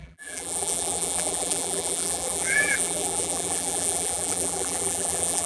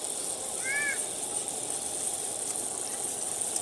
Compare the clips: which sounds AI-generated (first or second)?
first